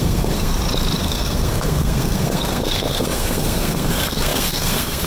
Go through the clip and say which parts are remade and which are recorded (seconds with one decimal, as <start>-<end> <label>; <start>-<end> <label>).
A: 0.0-0.5 remade; 0.5-1.0 recorded; 1.0-5.1 remade